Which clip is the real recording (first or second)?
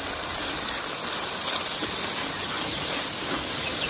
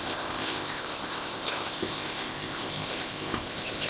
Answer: first